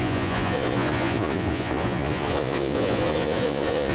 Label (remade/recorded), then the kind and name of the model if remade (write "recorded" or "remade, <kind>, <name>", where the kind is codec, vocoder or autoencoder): remade, vocoder, Vocos